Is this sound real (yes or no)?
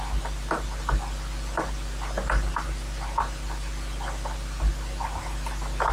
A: yes